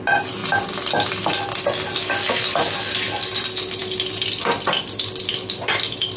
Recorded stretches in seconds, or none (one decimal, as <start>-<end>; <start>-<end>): 0.0-0.4; 1.1-6.2